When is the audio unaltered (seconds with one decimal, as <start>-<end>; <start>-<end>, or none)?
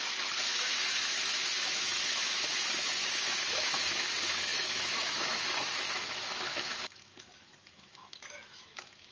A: none